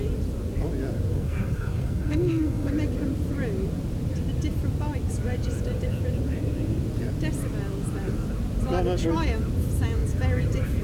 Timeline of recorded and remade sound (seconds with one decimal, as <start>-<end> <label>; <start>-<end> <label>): 0.0-1.1 recorded; 1.1-2.7 remade; 2.7-10.8 recorded